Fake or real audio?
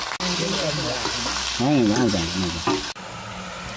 real